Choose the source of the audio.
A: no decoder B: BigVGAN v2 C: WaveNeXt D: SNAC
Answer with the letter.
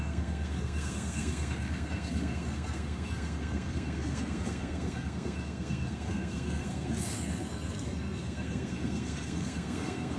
D